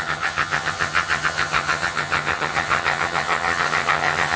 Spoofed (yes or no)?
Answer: yes